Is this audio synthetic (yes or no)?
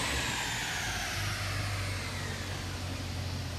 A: no